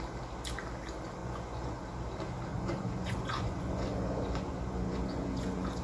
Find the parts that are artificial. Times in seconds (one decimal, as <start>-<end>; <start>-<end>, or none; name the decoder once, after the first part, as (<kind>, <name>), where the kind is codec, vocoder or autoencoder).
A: 1.2-1.8 (vocoder, Vocos); 2.5-5.8